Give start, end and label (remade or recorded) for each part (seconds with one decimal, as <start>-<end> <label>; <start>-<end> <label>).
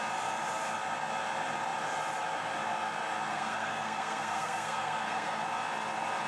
0.0-3.3 recorded; 3.3-5.4 remade; 5.4-6.3 recorded